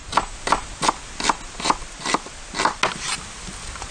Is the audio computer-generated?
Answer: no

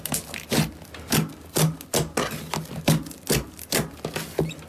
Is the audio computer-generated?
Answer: no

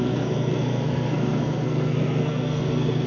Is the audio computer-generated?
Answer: yes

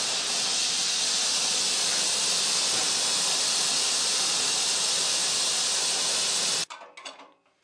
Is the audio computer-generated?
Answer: no